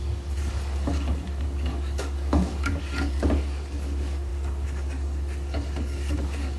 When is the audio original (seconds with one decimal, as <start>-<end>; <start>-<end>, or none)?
none

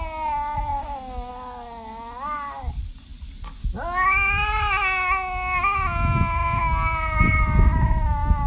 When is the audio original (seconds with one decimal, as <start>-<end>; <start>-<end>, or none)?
0.0-0.7; 1.3-8.5

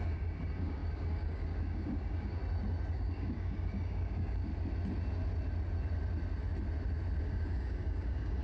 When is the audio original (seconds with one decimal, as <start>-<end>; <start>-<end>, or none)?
2.4-2.9; 4.5-7.2

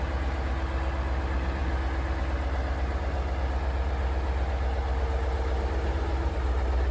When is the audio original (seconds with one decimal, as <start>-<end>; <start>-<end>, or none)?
0.0-6.9

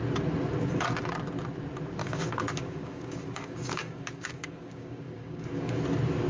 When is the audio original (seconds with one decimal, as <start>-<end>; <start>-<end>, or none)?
0.0-2.0; 5.8-6.3

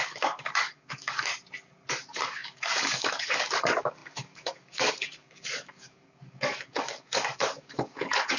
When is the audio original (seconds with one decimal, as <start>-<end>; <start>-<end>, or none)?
1.3-1.9